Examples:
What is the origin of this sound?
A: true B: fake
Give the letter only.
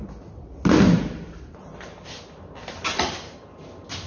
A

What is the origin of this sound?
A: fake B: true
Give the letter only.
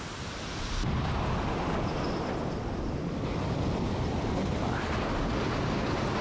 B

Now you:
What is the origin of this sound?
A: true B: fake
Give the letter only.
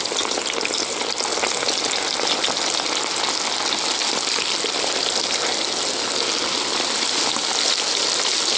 A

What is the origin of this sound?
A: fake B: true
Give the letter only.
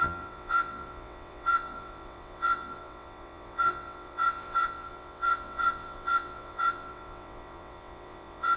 A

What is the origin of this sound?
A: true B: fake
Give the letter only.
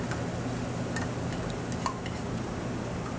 A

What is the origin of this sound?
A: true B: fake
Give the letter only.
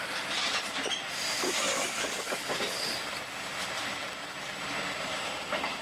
B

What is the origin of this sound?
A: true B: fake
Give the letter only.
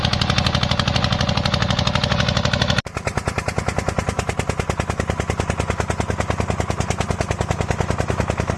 A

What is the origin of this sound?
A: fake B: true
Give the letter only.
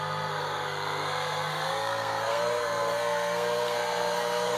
A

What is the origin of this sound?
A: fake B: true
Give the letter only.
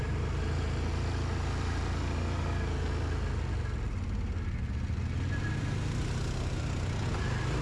B